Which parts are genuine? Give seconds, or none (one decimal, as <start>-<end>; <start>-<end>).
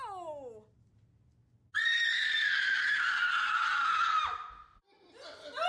0.0-1.8; 3.1-5.7